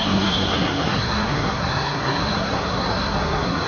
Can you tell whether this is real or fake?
fake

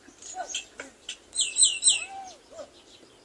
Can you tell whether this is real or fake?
real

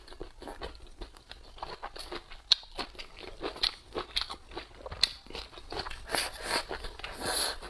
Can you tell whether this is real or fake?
real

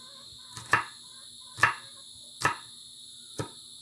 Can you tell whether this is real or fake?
real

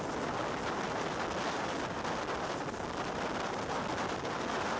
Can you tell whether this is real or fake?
real